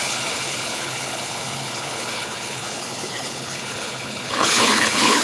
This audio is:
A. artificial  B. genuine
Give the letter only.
A